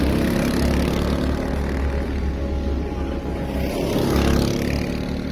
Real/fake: real